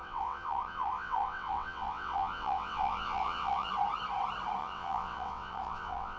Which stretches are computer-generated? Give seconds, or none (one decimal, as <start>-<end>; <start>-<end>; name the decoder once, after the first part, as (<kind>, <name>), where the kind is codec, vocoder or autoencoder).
0.0-3.7 (vocoder, WaveNeXt); 4.6-6.2